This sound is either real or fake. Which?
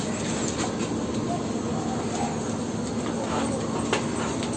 real